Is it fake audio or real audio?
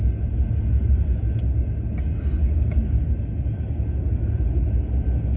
real